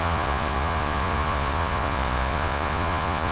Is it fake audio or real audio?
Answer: fake